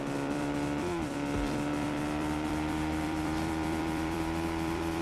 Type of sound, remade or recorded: remade